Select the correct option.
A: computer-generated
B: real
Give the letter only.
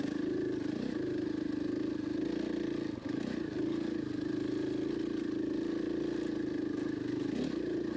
B